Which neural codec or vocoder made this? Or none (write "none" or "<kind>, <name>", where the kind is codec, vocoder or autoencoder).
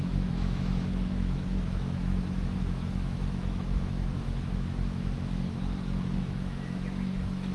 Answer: autoencoder, DAC-VAE